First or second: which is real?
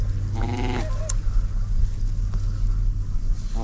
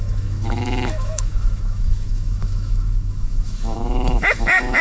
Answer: first